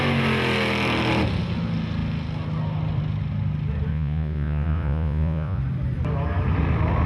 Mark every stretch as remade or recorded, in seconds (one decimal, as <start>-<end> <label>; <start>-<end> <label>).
0.0-3.9 recorded; 3.9-5.6 remade; 5.6-7.1 recorded